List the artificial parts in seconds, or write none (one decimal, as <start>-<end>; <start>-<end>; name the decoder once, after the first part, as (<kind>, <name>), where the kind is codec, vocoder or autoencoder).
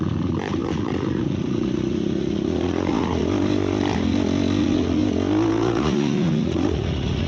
0.0-3.2 (vocoder, Vocos); 4.6-5.0; 5.5-7.3